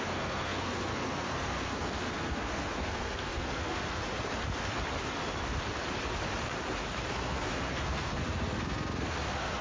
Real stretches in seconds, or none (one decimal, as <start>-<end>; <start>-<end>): 4.0-7.1